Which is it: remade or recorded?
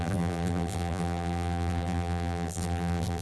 remade